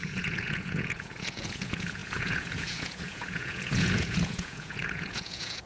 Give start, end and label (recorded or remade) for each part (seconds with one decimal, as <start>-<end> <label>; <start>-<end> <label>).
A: 0.0-5.7 remade